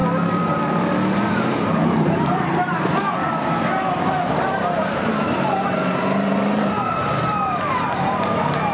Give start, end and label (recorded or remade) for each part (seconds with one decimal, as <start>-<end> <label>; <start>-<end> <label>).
0.0-1.3 recorded; 1.3-8.7 remade